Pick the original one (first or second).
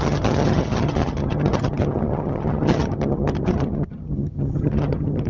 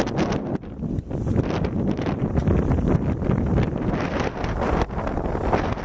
second